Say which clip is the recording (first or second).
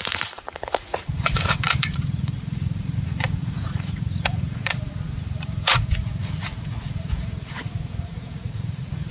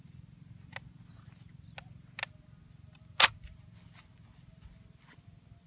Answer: second